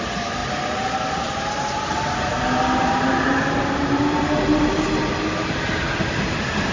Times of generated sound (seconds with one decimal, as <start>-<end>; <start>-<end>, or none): none